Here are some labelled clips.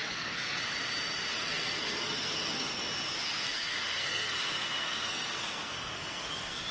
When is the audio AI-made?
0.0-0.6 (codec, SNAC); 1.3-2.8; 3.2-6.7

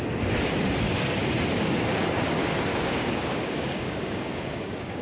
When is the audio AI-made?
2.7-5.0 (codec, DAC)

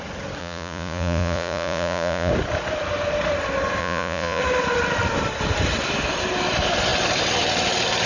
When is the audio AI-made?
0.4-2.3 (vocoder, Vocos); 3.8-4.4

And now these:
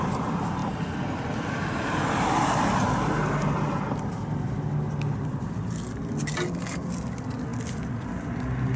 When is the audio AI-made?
0.6-1.8 (vocoder, BigVGAN v2); 7.5-8.1

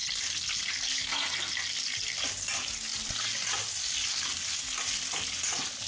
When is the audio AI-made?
none